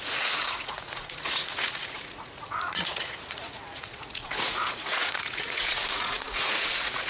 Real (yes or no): no